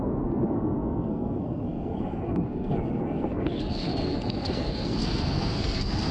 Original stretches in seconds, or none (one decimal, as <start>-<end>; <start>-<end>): none